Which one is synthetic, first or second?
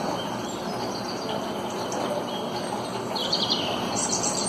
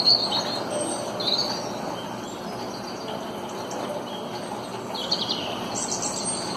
first